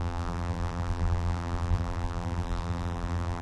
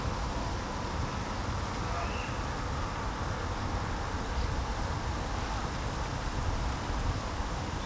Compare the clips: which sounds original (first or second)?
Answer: second